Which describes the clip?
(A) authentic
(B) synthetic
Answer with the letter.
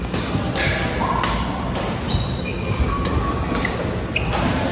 A